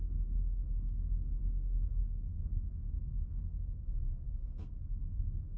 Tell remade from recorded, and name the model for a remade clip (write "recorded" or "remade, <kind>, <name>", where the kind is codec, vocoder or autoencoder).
remade, codec, SNAC